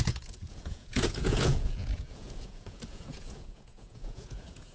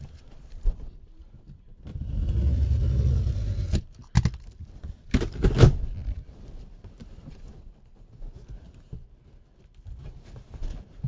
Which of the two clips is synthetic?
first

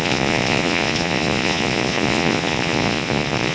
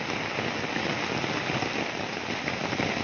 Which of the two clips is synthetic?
first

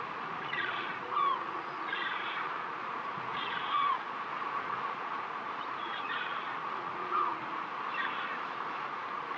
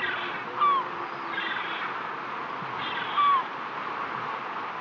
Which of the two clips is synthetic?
first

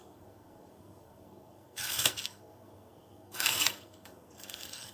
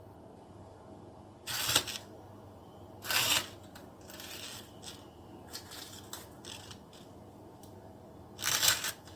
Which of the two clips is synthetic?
first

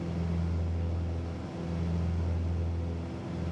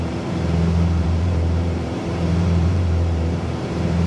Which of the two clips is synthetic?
second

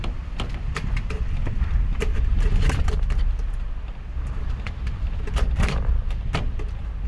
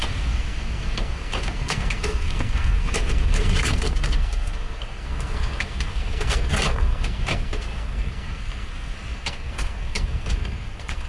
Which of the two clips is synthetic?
second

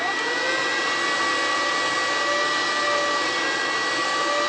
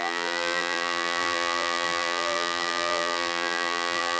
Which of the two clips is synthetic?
second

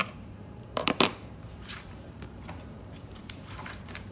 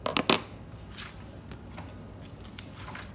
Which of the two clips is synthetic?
first